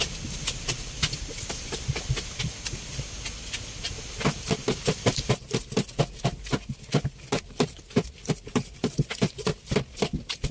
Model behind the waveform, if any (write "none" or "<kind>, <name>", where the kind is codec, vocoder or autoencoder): none